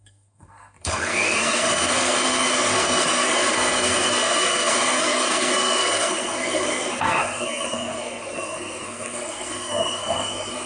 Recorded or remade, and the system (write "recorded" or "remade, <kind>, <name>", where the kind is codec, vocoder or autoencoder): remade, codec, SNAC